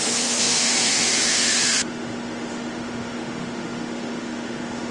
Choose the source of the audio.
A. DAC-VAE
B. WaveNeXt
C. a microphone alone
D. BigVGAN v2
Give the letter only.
A